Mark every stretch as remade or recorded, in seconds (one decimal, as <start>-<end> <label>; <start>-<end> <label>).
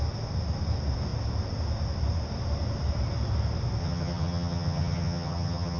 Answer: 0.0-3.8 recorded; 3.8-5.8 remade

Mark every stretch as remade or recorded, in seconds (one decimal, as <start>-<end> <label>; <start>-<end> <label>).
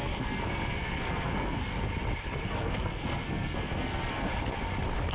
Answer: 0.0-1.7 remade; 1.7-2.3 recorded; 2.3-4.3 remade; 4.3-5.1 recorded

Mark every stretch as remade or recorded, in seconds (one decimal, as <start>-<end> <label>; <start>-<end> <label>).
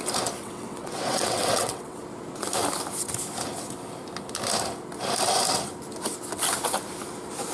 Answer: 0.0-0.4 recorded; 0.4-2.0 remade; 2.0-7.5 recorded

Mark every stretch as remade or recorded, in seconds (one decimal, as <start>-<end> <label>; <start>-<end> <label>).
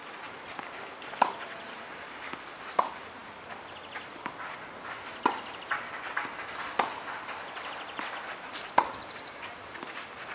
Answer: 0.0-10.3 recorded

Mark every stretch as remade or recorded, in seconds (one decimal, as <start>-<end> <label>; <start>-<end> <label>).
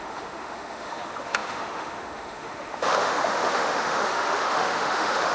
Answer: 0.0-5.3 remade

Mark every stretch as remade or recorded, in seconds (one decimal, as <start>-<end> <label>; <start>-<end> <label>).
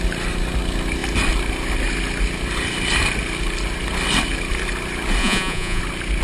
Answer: 0.0-5.2 recorded; 5.2-5.8 remade; 5.8-6.2 recorded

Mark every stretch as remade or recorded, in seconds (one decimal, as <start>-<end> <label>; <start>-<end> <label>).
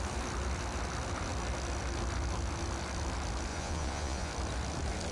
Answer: 0.0-3.5 recorded; 3.5-4.3 remade; 4.3-5.1 recorded